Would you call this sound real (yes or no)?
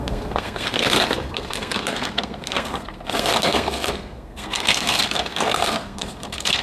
no